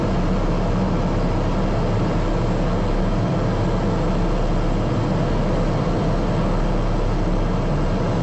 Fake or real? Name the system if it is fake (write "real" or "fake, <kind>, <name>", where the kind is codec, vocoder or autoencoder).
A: real